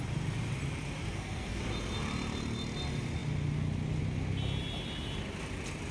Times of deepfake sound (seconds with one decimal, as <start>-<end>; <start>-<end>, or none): 1.1-1.6